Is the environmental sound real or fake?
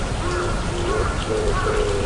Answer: real